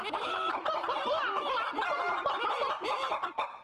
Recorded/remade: remade